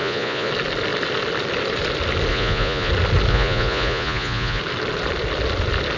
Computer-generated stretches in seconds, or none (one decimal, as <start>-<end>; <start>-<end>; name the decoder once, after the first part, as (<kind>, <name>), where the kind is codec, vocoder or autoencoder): 0.0-0.5 (vocoder, Vocos); 2.3-2.9; 3.3-4.6